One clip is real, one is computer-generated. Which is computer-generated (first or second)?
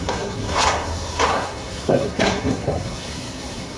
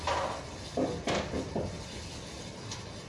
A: first